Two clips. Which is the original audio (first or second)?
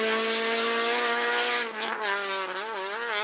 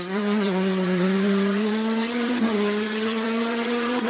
first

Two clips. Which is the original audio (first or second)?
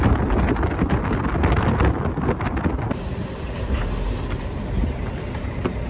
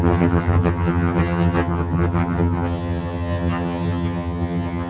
first